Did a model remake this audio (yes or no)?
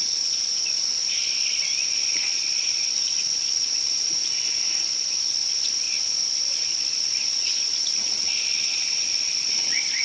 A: yes